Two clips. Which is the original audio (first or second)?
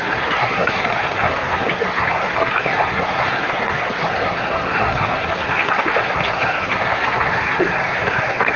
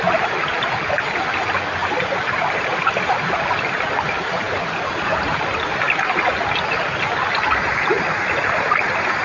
second